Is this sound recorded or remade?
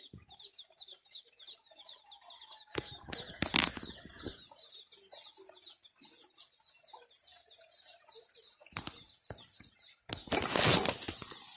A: recorded